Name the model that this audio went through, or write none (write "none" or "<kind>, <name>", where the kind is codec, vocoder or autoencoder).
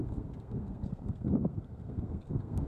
codec, SNAC